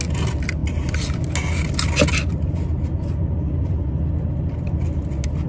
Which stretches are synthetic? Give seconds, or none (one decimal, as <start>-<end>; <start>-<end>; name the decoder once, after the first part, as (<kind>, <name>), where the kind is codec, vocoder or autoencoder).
none